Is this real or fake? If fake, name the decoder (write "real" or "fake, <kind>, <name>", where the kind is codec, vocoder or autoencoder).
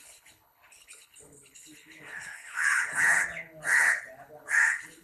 fake, codec, HILCodec